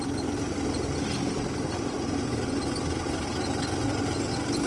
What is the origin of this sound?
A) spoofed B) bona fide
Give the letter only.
B